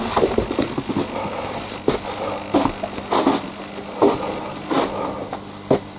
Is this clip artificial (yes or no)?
no